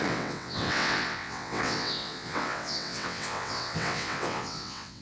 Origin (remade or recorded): remade